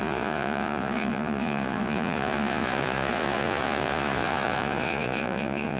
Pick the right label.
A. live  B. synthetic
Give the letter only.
B